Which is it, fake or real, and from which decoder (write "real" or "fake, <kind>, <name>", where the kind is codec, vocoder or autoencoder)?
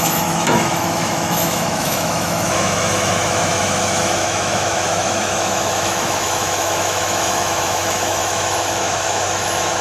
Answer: fake, autoencoder, DAC-VAE